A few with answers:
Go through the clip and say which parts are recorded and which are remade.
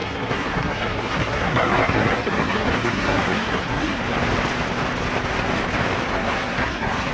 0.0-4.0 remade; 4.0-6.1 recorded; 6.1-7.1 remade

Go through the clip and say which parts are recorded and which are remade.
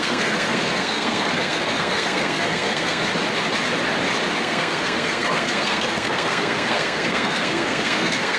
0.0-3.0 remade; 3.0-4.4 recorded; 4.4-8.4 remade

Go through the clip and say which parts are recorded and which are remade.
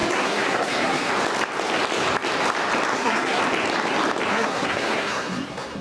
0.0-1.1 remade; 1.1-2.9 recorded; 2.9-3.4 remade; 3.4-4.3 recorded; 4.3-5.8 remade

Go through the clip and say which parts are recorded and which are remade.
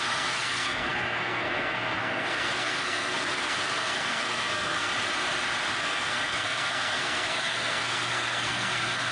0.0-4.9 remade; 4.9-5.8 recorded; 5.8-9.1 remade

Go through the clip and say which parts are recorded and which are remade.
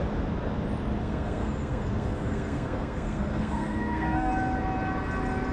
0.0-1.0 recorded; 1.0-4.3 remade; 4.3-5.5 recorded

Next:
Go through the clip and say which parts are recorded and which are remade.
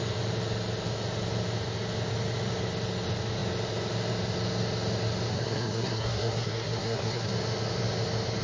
0.0-5.3 recorded; 5.3-7.3 remade; 7.3-8.4 recorded